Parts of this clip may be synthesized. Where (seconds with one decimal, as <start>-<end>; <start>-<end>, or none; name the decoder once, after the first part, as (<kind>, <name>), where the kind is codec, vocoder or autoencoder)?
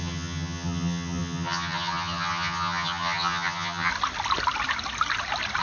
0.0-3.9 (vocoder, HiFi-GAN)